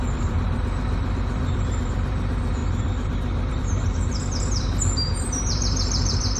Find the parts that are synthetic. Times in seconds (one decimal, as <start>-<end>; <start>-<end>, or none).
0.0-2.6; 3.5-6.4